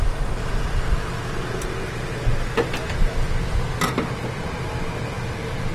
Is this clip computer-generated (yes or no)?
no